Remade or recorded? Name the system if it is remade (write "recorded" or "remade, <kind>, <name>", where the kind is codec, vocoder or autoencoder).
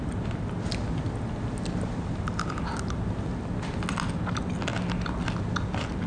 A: recorded